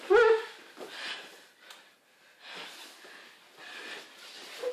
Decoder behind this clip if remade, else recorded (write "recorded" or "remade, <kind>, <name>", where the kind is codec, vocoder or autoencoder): recorded